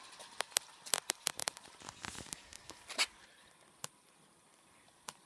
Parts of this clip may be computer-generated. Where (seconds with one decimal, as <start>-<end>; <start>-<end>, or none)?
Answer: 1.4-3.5; 4.5-5.3